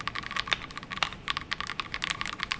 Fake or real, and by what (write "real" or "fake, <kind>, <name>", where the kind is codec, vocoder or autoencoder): real